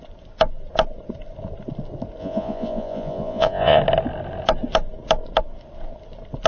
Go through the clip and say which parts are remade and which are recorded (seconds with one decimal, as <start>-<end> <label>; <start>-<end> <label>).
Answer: 0.0-2.2 recorded; 2.2-3.8 remade; 3.8-6.5 recorded